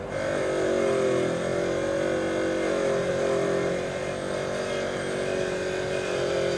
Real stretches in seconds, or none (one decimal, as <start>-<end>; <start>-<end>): 0.0-6.6